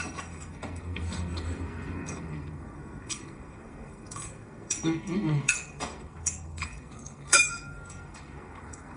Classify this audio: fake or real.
fake